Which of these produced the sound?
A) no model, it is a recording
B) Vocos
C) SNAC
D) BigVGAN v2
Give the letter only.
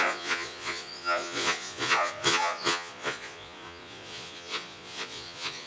B